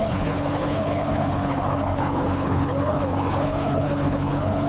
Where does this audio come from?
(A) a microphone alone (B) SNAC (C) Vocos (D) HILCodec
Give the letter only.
D